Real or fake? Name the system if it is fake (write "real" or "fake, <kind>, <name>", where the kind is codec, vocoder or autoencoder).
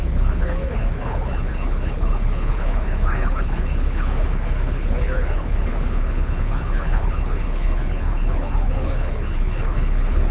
fake, codec, HILCodec